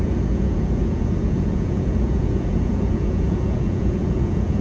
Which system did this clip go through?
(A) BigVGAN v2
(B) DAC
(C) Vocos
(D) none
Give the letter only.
C